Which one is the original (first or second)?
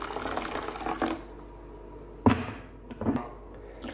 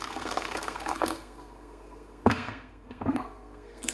first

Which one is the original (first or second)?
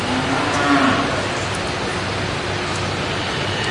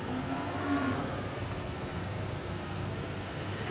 first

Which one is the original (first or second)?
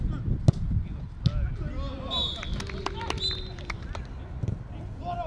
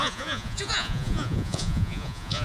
first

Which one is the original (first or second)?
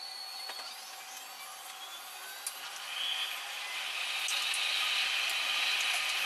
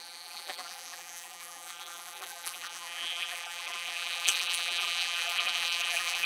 first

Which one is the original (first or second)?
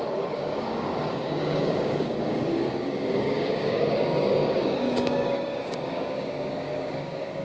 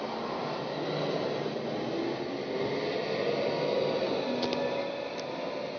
second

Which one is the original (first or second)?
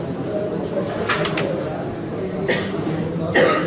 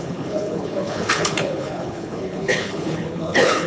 first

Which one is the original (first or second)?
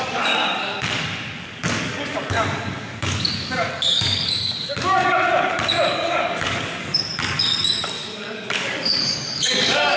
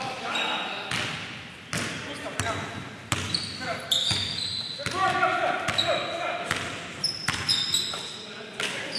second